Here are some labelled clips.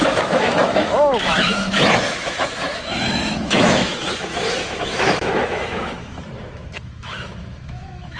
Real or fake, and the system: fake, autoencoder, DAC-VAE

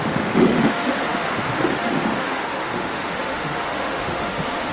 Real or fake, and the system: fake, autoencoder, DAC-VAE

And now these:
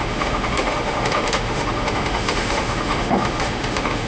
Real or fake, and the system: fake, autoencoder, DAC-VAE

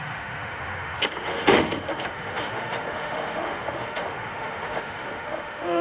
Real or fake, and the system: fake, autoencoder, DAC-VAE